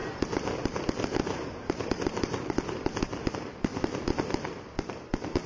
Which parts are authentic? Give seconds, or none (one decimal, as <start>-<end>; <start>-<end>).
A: 3.3-3.7; 4.2-5.5